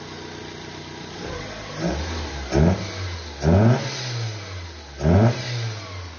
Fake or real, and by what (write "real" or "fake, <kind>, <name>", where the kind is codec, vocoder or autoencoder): real